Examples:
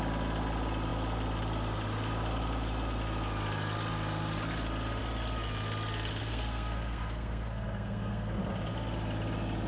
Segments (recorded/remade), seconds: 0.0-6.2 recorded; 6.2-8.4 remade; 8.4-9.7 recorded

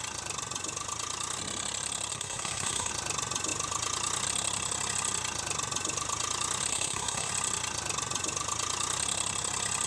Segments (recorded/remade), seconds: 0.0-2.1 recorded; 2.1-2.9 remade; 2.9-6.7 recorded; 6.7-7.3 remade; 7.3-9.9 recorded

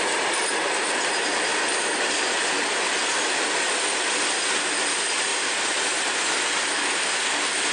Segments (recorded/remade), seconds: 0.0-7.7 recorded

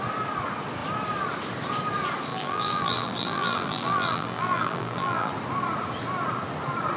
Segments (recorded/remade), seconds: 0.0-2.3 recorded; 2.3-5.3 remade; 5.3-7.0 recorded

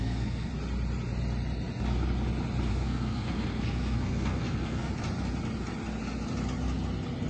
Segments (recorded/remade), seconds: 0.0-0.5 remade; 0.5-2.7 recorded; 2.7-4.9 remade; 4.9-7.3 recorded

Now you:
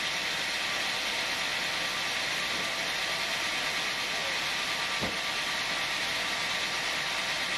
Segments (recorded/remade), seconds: 0.0-6.4 remade; 6.4-7.6 recorded

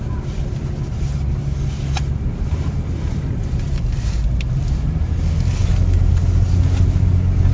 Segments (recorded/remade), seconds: 0.0-7.5 recorded

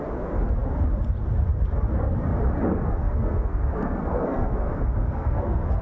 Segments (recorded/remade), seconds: 0.0-3.0 recorded; 3.0-5.8 remade